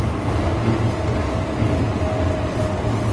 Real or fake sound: real